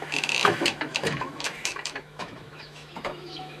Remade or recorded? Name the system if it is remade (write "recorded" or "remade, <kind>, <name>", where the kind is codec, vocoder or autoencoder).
remade, autoencoder, DAC-VAE